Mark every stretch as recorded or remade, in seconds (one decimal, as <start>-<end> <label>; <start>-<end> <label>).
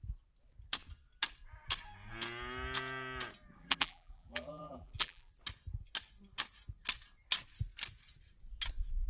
0.0-3.6 recorded; 3.6-5.3 remade; 5.3-9.1 recorded